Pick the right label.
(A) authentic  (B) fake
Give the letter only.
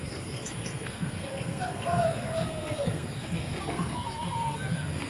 B